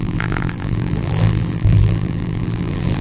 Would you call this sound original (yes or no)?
no